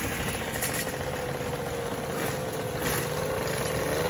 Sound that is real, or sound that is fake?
real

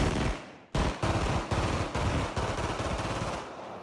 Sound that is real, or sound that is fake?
real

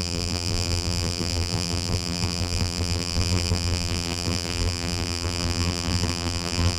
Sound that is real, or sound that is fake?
fake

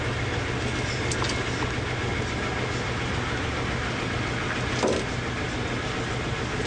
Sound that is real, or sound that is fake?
real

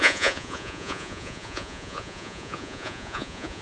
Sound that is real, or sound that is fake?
fake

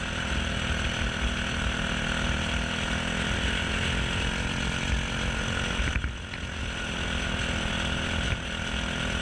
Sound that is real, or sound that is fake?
real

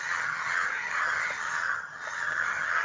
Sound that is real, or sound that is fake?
fake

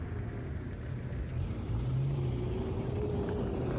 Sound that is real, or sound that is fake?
real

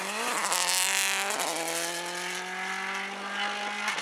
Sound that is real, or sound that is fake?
real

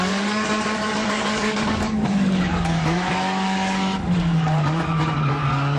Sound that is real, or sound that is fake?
fake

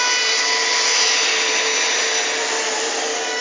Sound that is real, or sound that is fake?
real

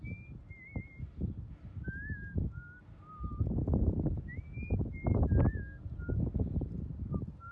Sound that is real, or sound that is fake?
real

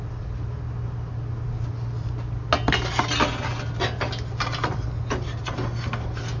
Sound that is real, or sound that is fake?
real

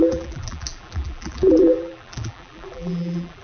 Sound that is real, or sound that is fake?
fake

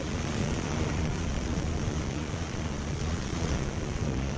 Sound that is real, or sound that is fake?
fake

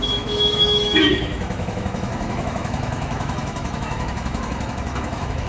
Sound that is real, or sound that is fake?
fake